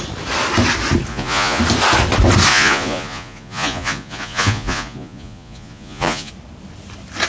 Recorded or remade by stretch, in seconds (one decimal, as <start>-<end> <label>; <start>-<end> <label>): 0.0-1.1 recorded; 1.1-1.6 remade; 1.6-2.5 recorded; 2.5-6.3 remade; 6.3-7.3 recorded